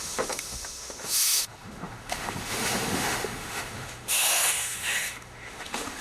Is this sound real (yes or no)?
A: no